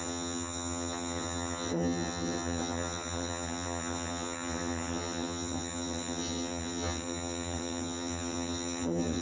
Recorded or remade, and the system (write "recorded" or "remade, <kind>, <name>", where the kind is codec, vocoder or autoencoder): remade, vocoder, HiFi-GAN